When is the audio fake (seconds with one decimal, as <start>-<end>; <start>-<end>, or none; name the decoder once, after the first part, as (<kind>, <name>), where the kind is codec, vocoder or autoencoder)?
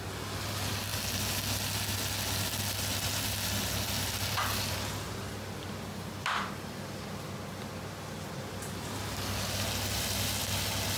none